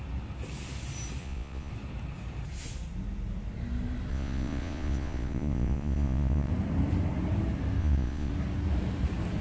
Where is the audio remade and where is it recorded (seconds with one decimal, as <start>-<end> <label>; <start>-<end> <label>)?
0.0-1.2 recorded; 1.2-1.7 remade; 1.7-4.1 recorded; 4.1-6.5 remade; 6.5-7.8 recorded; 7.8-8.3 remade; 8.3-9.4 recorded